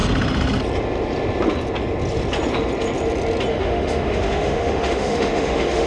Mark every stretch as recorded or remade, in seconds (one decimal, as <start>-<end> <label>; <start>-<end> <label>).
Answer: 0.0-3.5 recorded; 3.5-5.9 remade